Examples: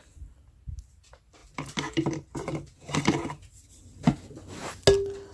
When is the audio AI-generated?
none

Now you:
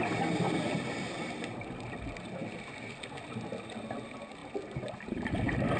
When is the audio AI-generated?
none

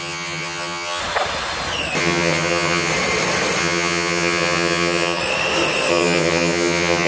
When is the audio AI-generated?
0.0-1.0 (vocoder, HiFi-GAN); 2.0-2.9; 3.6-5.2; 5.9-7.1

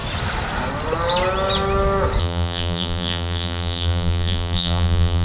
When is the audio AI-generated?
2.2-5.2 (vocoder, BigVGAN v2)

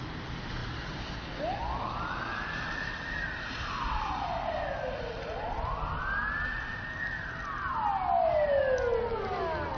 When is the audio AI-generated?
none

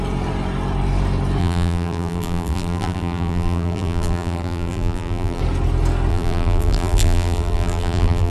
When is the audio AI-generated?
1.4-5.4 (vocoder, BigVGAN v2); 6.1-8.3

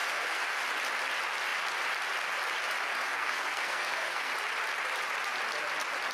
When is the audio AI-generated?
0.0-0.6 (codec, SNAC); 2.9-4.3